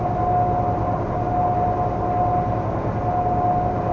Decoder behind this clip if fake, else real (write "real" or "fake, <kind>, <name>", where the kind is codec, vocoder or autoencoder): real